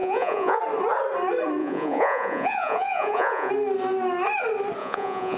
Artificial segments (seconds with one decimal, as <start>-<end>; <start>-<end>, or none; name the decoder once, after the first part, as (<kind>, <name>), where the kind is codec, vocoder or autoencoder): 0.0-0.6 (vocoder, Vocos); 1.6-3.5; 4.8-5.4